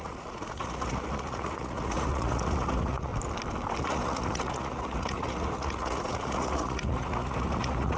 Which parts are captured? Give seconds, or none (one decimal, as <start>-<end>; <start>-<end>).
3.1-3.8